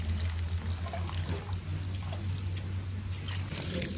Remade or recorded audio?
recorded